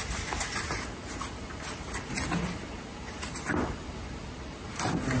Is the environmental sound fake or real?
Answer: real